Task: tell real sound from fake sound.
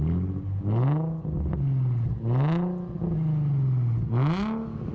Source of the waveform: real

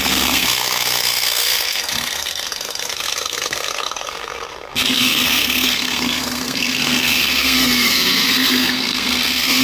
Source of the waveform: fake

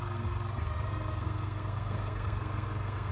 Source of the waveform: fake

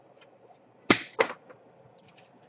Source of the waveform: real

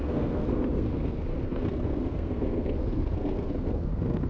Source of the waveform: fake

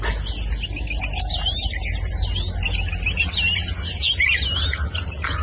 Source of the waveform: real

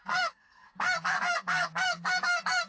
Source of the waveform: fake